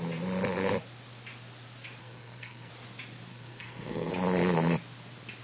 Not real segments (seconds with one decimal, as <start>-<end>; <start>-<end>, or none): 2.0-2.7; 3.3-4.1

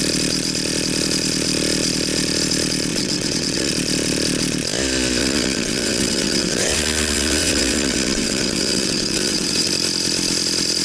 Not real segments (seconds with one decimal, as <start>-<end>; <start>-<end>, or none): 2.9-3.7; 5.2-9.7